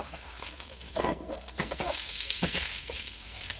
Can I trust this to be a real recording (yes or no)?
no